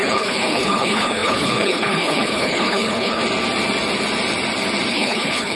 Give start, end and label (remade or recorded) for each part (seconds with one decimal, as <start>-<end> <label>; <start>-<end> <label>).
0.0-3.2 remade; 3.2-4.9 recorded; 4.9-5.6 remade